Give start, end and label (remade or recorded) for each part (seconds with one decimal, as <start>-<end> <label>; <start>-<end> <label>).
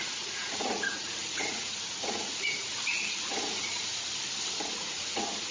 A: 0.0-3.9 remade; 3.9-4.7 recorded; 4.7-5.5 remade